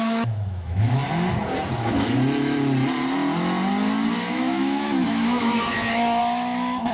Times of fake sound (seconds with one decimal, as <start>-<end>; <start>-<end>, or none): 0.0-1.0; 4.3-6.9

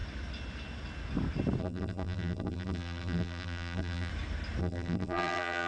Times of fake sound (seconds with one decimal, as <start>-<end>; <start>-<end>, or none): 1.6-4.1; 4.6-5.7

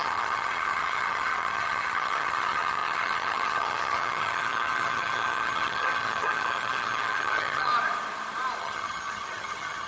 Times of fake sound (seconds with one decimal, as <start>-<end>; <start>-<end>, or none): 0.0-7.7; 8.6-9.9

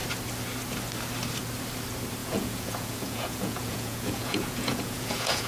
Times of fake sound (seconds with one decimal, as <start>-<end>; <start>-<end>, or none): 2.2-5.5

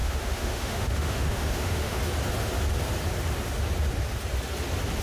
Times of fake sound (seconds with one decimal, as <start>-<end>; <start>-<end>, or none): 0.0-2.0

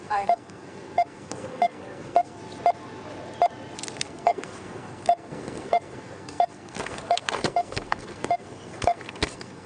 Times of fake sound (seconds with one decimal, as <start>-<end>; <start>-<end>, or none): 0.0-2.4; 4.0-9.7

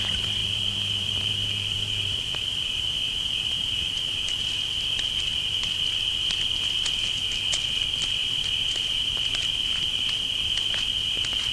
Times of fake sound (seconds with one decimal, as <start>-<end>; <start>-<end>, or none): 0.4-4.4; 8.2-10.1